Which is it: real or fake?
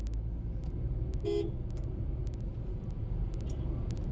real